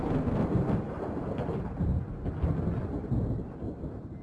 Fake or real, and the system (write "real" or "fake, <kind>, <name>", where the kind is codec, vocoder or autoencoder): real